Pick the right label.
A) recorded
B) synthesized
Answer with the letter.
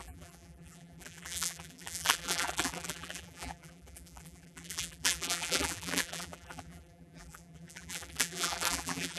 B